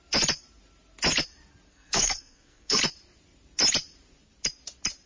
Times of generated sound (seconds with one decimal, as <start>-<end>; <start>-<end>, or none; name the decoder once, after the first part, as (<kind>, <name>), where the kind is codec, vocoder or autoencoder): 1.7-2.8 (codec, SNAC)